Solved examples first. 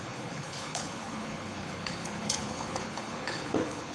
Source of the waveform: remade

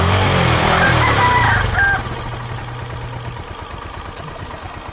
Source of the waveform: recorded